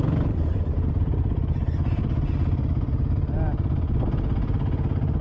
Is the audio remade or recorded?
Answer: recorded